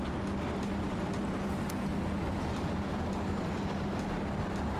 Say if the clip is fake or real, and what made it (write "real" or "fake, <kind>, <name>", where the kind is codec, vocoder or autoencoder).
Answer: real